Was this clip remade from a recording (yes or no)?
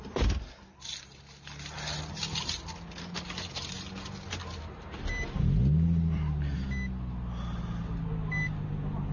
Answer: no